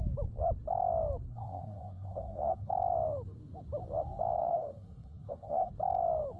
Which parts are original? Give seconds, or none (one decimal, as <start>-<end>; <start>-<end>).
0.0-1.3; 2.7-4.4; 5.7-6.4